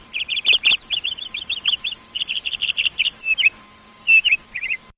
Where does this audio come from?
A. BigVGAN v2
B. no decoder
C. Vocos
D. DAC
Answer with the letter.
A